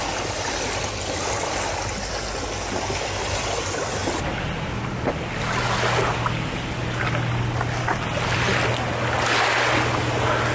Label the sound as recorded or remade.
recorded